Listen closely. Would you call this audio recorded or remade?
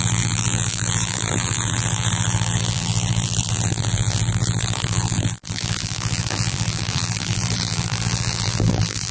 remade